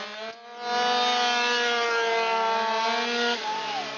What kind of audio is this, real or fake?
real